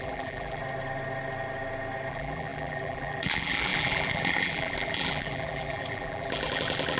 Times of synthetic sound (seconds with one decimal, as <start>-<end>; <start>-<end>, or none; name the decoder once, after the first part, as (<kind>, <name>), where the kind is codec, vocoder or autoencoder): 0.0-0.6 (vocoder, BigVGAN v2); 2.1-7.0